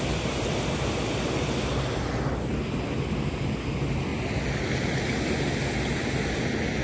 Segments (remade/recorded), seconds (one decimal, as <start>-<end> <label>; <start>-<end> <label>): 0.0-6.8 recorded